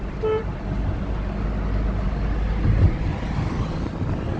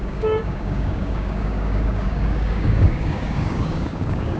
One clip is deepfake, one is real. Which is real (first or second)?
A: first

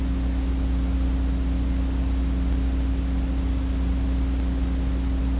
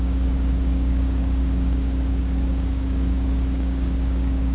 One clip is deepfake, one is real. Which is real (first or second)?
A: first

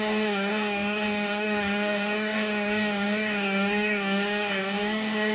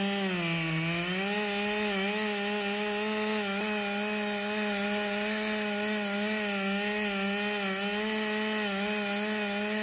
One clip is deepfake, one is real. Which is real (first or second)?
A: second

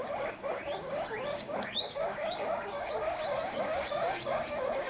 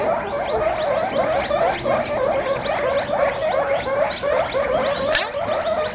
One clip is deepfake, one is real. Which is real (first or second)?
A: second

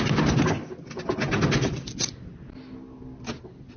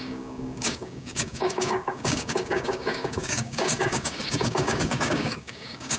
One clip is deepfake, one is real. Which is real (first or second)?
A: first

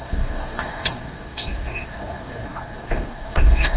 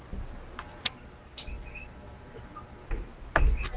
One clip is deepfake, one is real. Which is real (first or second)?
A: second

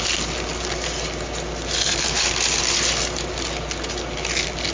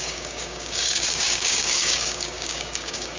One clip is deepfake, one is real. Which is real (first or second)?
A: first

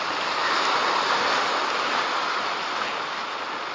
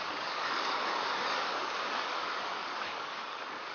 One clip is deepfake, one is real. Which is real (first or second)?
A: first